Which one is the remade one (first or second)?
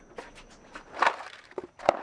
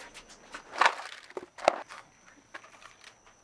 first